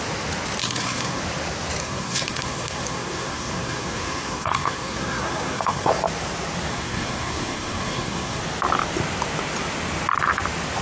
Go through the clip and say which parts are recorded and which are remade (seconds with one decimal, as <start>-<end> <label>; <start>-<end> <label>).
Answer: 0.0-0.6 recorded; 0.6-1.2 remade; 1.2-1.8 recorded; 1.8-5.9 remade; 5.9-6.7 recorded; 6.7-8.4 remade; 8.4-10.8 recorded